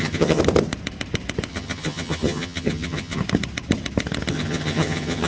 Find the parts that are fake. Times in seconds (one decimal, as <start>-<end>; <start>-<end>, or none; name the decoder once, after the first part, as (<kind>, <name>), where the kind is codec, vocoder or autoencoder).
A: 0.0-0.4 (vocoder, HiFi-GAN); 1.5-3.2; 4.3-5.3